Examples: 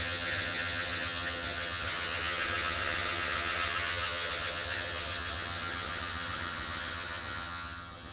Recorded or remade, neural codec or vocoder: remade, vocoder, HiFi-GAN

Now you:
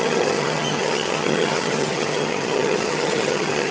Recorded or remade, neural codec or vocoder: remade, vocoder, HiFi-GAN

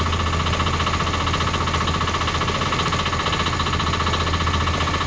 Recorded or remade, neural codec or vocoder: recorded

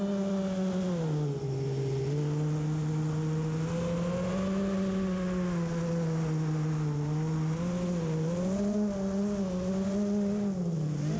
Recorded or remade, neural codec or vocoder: recorded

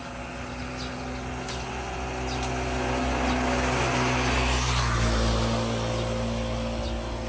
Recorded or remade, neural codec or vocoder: recorded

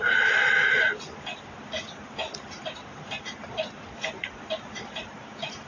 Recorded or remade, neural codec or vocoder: recorded